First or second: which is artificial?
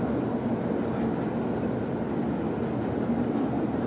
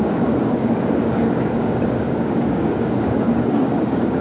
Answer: second